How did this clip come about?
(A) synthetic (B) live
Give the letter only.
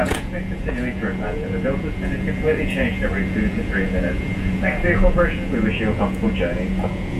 A